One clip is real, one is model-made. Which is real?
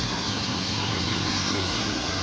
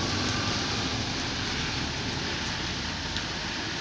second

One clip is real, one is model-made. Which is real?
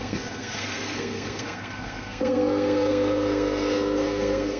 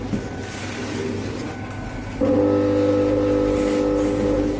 second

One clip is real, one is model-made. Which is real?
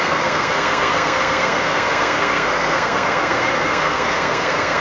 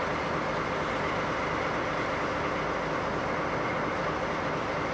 second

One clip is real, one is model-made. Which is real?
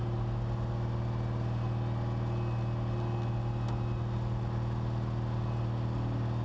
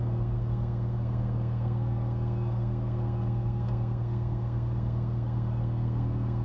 first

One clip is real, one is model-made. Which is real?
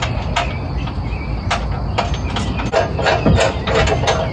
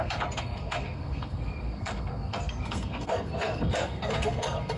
first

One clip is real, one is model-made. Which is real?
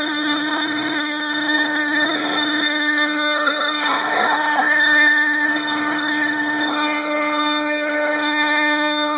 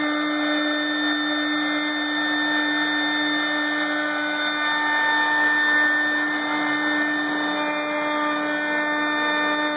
second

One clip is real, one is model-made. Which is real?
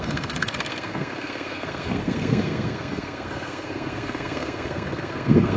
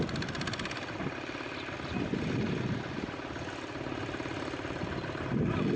second